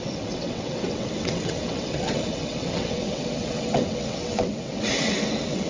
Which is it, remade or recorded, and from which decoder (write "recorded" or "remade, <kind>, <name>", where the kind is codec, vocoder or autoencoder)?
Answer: remade, vocoder, WaveNeXt